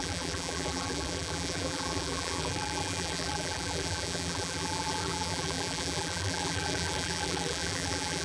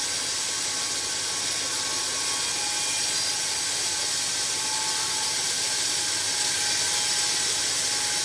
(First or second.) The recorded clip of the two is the second